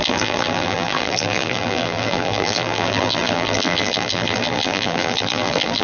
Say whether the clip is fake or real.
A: fake